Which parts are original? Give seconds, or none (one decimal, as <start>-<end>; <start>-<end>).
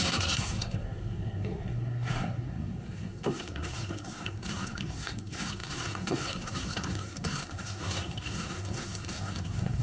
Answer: none